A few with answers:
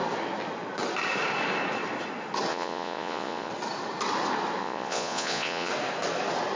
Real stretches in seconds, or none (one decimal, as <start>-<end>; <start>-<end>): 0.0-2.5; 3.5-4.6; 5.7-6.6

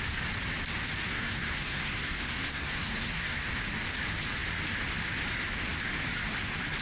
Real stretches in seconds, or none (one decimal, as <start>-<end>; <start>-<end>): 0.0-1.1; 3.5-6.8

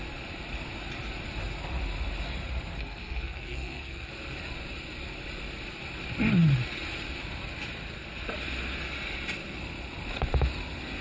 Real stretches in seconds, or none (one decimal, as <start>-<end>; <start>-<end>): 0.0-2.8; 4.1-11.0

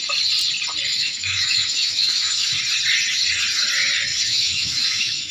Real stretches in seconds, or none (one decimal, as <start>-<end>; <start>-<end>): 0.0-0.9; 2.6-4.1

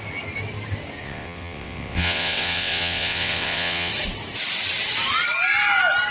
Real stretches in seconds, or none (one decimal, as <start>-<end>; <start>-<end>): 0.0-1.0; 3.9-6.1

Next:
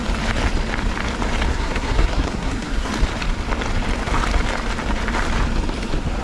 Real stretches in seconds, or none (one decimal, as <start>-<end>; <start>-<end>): 0.0-1.5; 2.9-6.2